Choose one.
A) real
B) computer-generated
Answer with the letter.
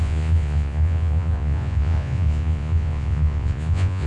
B